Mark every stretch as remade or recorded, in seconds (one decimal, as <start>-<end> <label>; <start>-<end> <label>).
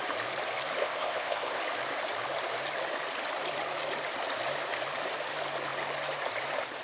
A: 0.0-0.8 recorded; 0.8-1.6 remade; 1.6-6.8 recorded